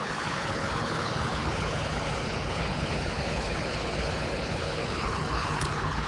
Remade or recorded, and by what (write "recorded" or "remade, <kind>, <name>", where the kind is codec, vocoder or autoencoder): remade, codec, HILCodec